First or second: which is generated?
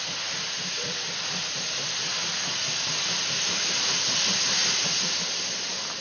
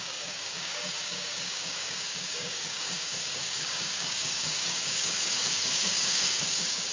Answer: second